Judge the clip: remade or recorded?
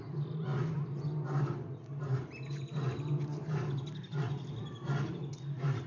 recorded